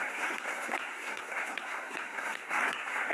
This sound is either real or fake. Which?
fake